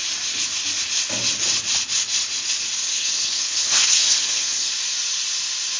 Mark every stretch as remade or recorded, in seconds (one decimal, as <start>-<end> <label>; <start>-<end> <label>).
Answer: 0.0-2.8 recorded; 2.8-4.7 remade; 4.7-5.8 recorded